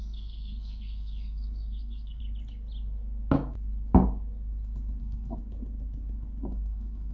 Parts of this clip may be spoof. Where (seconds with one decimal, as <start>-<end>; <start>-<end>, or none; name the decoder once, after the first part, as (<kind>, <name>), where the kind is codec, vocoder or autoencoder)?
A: 0.0-2.2 (codec, SNAC); 5.0-5.4; 6.5-7.1